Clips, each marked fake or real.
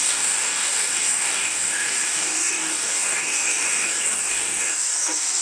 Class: fake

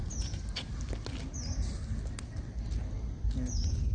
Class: real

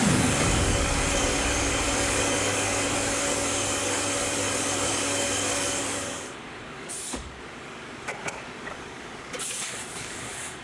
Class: fake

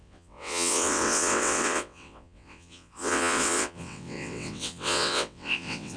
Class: fake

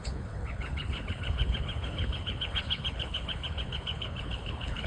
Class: fake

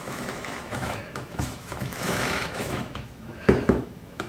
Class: fake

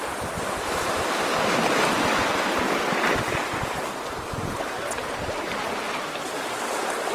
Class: real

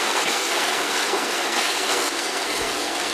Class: fake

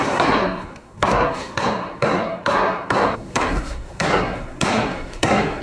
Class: fake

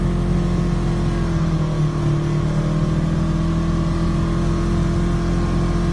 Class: real